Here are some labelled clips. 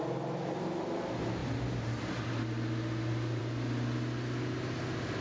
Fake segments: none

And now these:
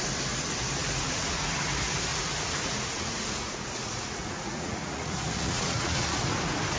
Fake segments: 0.8-1.5 (vocoder, Vocos); 2.1-6.2